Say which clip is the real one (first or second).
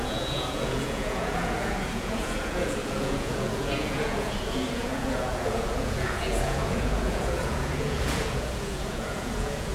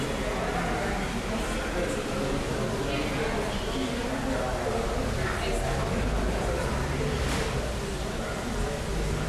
second